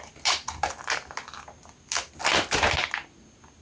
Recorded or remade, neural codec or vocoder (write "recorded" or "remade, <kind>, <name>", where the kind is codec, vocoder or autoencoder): recorded